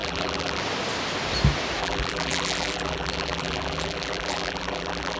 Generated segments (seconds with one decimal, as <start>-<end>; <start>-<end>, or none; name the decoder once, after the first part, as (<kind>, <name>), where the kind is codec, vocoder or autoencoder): 0.0-0.6 (vocoder, BigVGAN v2); 1.8-5.2